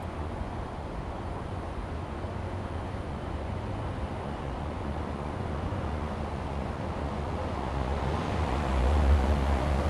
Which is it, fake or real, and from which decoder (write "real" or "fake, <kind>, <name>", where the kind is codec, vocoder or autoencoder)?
fake, vocoder, Vocos